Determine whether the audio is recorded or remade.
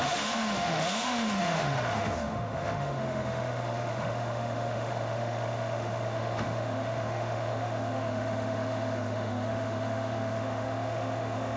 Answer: remade